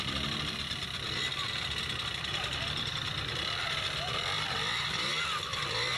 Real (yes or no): yes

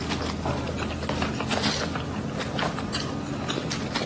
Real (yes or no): yes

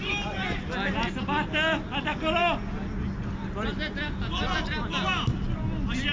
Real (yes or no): yes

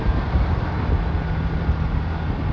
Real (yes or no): yes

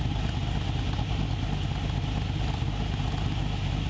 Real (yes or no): yes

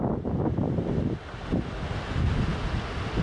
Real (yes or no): yes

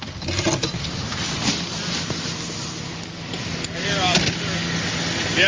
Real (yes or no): yes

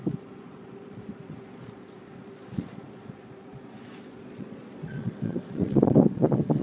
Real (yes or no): no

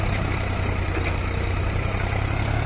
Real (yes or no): yes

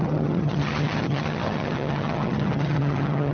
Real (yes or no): no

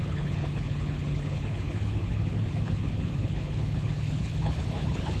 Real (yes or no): no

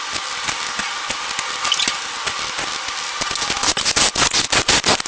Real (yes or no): yes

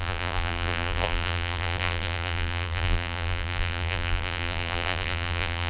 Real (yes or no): no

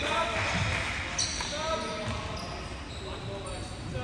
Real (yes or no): yes